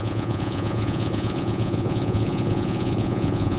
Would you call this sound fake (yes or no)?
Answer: yes